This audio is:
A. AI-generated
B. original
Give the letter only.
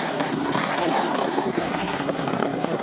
A